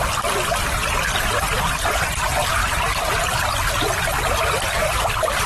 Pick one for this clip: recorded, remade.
remade